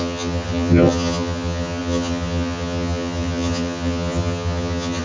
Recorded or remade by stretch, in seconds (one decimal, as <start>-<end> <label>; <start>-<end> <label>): 0.0-5.0 remade